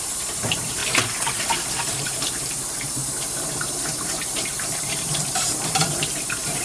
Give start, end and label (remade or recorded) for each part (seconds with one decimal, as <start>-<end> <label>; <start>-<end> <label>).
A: 0.0-0.8 remade; 0.8-1.5 recorded; 1.5-3.0 remade; 3.0-4.0 recorded; 4.0-6.6 remade